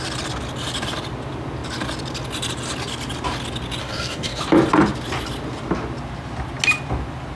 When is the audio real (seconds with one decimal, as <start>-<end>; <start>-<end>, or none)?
0.0-3.8; 4.4-7.4